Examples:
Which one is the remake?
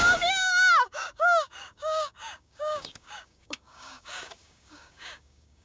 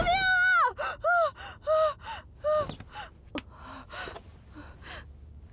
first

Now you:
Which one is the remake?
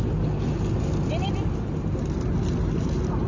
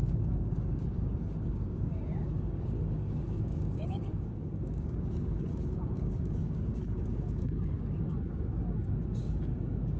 second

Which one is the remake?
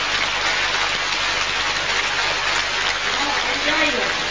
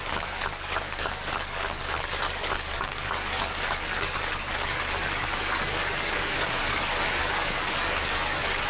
second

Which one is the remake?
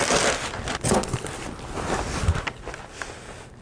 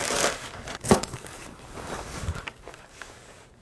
second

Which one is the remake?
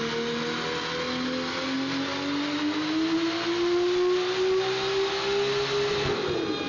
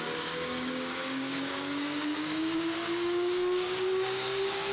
second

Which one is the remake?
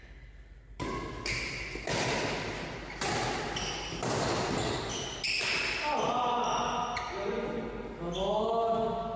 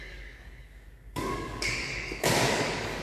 second